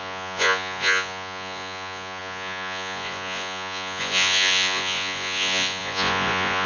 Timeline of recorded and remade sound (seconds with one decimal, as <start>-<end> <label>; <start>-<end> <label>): 0.0-6.7 remade